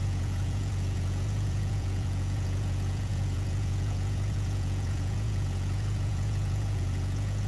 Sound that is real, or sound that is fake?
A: fake